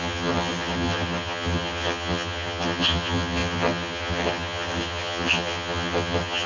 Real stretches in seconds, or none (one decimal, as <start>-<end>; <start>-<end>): none